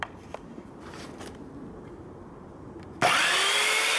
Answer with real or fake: real